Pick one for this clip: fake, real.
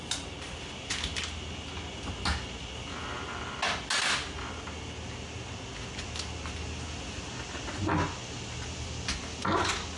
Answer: real